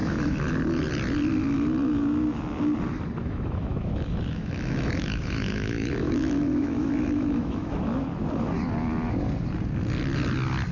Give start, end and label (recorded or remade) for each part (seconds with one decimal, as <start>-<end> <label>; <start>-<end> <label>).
0.0-0.5 remade; 0.5-3.2 recorded; 3.2-7.8 remade; 7.8-10.7 recorded